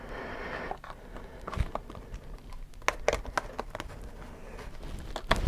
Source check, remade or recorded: recorded